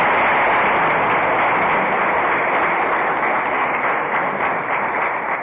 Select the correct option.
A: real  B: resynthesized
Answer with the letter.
A